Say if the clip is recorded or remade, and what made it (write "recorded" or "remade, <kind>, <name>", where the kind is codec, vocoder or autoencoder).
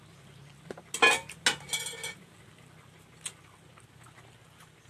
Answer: recorded